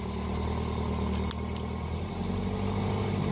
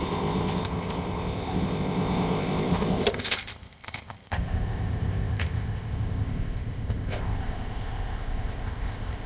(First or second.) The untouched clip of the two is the first